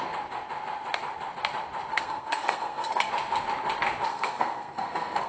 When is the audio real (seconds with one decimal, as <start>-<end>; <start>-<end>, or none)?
0.0-1.9; 3.1-4.1